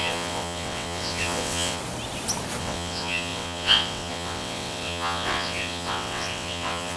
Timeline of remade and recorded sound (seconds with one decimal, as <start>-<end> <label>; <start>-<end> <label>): 0.0-1.8 remade; 1.8-2.6 recorded; 2.6-7.0 remade